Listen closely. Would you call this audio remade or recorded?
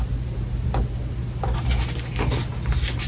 recorded